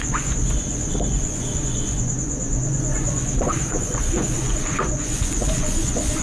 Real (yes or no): no